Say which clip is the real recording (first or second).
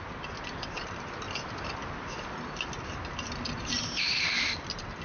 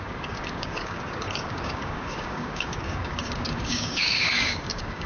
first